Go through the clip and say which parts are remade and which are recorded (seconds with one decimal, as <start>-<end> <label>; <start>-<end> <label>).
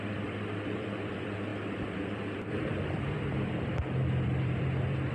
0.0-5.1 remade